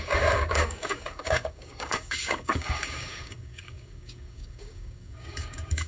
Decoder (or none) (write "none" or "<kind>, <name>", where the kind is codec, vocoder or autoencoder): codec, DAC